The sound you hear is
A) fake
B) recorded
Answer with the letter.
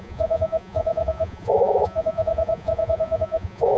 A